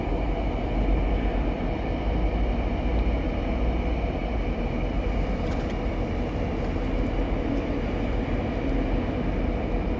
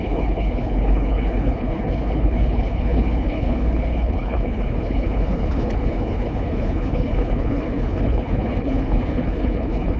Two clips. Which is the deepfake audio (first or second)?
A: second